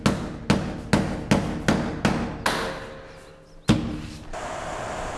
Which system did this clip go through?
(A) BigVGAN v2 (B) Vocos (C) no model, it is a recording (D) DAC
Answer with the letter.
C